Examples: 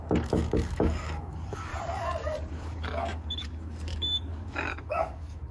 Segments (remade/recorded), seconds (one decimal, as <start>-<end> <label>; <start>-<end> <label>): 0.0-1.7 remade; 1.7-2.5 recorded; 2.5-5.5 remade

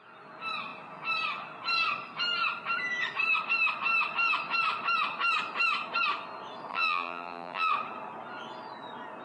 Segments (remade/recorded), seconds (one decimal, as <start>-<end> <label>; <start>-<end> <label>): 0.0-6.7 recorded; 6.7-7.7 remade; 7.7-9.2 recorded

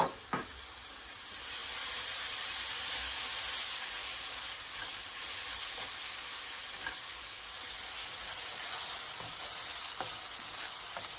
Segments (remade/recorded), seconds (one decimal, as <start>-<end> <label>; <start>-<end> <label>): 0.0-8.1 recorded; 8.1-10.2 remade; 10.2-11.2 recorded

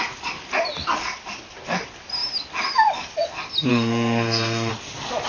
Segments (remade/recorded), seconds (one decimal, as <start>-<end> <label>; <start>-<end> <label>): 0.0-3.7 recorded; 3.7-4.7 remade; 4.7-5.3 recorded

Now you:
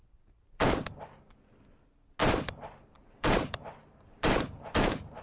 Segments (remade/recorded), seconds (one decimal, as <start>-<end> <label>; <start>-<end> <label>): 0.0-1.0 remade; 1.0-2.2 recorded; 2.2-5.2 remade

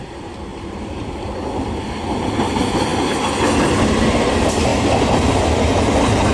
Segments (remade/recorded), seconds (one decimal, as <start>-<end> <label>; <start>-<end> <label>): 0.0-0.5 recorded; 0.5-1.3 remade; 1.3-6.3 recorded